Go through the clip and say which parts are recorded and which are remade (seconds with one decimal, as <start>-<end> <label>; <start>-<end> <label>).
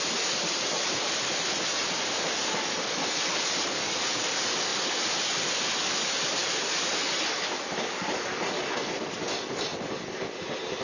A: 0.0-10.8 recorded